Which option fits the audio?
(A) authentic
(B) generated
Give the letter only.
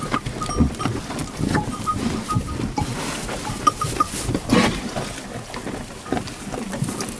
A